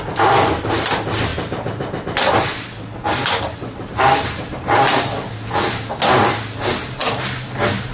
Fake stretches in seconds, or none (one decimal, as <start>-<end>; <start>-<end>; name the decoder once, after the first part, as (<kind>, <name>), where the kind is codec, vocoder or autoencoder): none